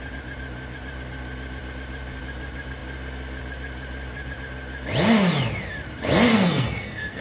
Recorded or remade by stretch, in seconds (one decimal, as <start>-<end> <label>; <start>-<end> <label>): 0.0-6.3 recorded; 6.3-7.2 remade